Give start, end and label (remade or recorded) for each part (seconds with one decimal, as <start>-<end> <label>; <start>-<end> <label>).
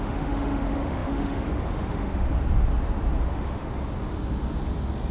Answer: 0.0-2.3 remade; 2.3-3.3 recorded; 3.3-3.7 remade; 3.7-5.1 recorded